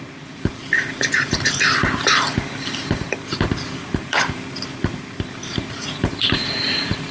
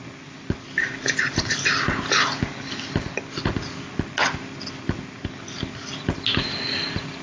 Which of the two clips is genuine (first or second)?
second